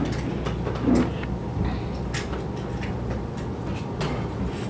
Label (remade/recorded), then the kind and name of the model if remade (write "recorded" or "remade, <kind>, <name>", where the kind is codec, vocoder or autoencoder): recorded